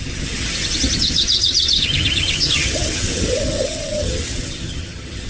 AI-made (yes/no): yes